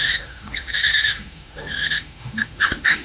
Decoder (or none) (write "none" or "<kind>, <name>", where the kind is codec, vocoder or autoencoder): autoencoder, DAC-VAE